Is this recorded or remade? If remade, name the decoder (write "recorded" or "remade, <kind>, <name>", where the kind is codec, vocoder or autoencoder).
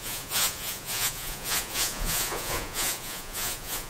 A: remade, vocoder, Vocos